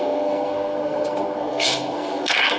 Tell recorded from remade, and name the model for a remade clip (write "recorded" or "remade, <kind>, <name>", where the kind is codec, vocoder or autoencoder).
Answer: remade, codec, SNAC